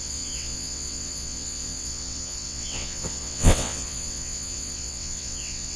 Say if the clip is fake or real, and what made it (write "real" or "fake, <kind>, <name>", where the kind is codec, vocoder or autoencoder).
fake, vocoder, WaveNeXt